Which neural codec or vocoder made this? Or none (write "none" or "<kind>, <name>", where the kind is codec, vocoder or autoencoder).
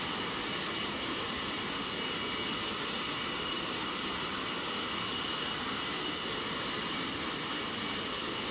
none